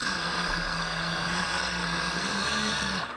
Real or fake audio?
fake